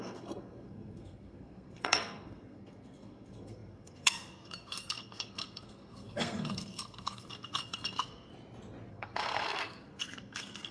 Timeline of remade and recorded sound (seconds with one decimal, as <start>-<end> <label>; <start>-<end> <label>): 0.0-8.3 remade; 8.3-8.9 recorded; 8.9-10.7 remade